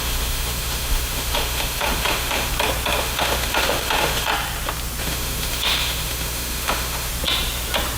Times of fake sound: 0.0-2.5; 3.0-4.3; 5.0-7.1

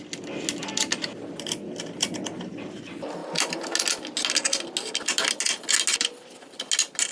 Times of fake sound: none

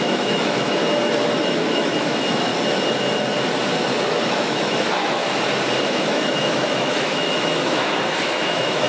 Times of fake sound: 0.0-0.8; 1.4-2.5; 4.1-5.2; 5.8-8.9

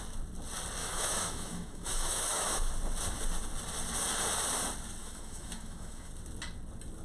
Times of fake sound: 0.8-2.7; 5.0-6.1